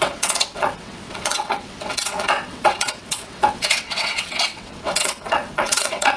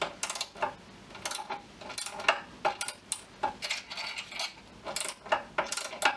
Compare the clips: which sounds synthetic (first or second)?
first